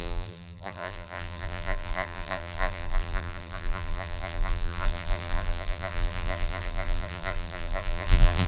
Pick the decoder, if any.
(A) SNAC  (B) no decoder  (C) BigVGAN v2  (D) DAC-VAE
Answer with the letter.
C